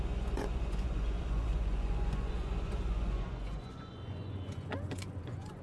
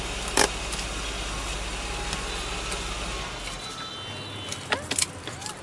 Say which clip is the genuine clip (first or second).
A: second